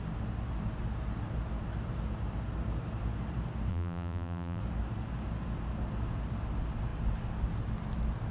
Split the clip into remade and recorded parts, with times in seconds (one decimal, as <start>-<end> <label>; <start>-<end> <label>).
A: 0.0-3.7 recorded; 3.7-4.6 remade; 4.6-8.3 recorded